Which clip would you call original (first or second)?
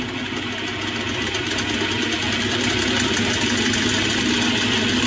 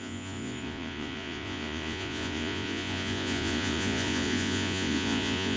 first